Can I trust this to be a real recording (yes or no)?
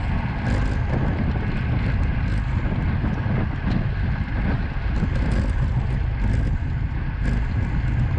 yes